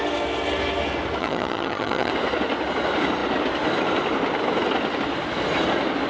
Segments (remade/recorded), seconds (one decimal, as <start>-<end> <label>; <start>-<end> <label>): 0.0-1.2 recorded; 1.2-2.1 remade; 2.1-6.1 recorded